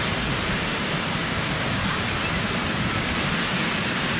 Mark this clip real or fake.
real